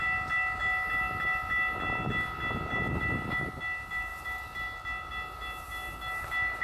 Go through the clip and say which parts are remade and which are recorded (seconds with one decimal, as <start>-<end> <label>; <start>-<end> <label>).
0.0-6.6 recorded